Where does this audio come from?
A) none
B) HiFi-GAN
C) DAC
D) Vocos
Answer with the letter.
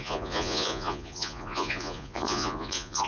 D